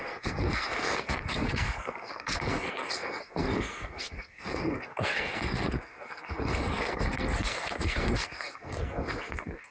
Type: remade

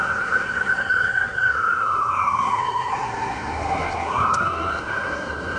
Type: remade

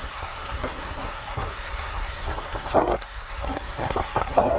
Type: remade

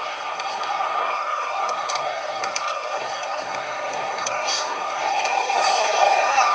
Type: remade